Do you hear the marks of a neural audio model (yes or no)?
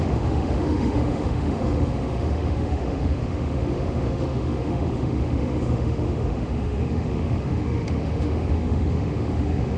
yes